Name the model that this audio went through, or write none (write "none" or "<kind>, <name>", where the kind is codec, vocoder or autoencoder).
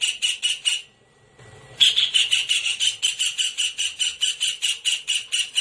vocoder, BigVGAN v2